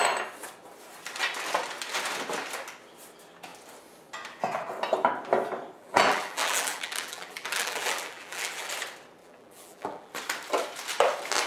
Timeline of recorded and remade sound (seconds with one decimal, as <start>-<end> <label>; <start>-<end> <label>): 0.0-5.8 recorded; 5.8-8.7 remade; 8.7-9.2 recorded; 9.2-10.1 remade; 10.1-11.5 recorded